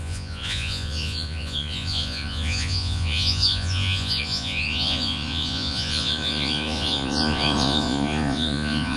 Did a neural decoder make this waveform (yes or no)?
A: yes